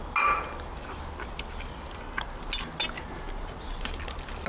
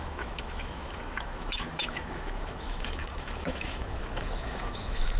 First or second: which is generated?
second